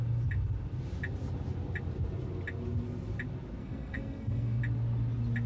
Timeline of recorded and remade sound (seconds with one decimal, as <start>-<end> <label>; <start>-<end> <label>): 0.0-3.6 recorded; 3.6-4.6 remade; 4.6-5.5 recorded